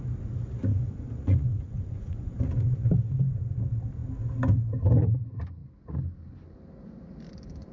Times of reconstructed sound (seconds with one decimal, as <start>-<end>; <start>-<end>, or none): 0.7-2.9